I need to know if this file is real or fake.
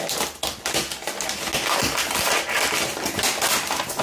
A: real